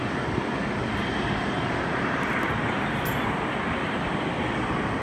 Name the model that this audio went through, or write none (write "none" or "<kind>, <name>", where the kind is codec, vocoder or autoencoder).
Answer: none